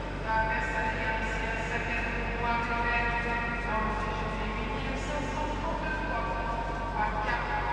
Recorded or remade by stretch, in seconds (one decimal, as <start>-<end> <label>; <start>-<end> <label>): 0.0-7.7 recorded